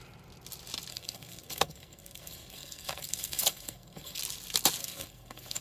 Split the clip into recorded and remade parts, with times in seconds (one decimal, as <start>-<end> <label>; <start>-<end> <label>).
0.0-0.9 recorded; 0.9-4.2 remade; 4.2-4.8 recorded; 4.8-5.6 remade

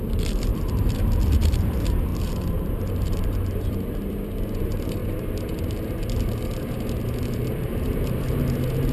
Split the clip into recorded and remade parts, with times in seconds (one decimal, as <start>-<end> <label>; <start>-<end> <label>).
0.0-5.0 remade; 5.0-7.2 recorded; 7.2-8.9 remade

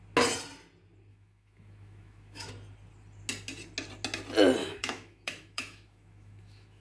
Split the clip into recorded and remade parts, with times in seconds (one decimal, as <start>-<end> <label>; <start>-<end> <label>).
0.0-1.1 recorded; 1.1-2.5 remade; 2.5-4.6 recorded; 4.6-6.8 remade

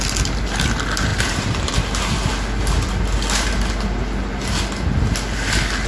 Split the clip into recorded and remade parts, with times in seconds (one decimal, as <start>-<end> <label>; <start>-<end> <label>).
0.0-1.1 recorded; 1.1-1.7 remade; 1.7-5.9 recorded

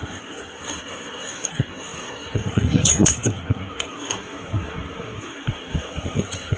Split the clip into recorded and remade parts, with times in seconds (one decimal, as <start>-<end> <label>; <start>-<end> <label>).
0.0-6.6 remade

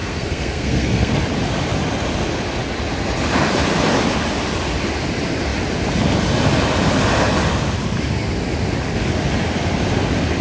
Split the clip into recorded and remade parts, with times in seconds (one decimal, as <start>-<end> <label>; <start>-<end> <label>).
0.0-1.1 remade; 1.1-10.4 recorded

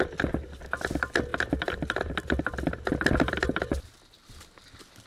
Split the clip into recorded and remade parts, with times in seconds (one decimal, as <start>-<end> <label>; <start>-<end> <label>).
0.0-5.1 recorded